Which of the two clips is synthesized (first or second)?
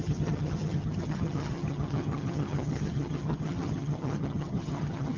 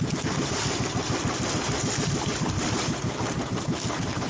first